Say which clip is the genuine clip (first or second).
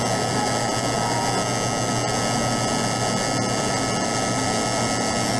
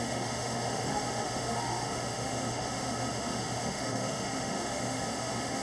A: first